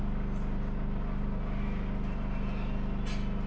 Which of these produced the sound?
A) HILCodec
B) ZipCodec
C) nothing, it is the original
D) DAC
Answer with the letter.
C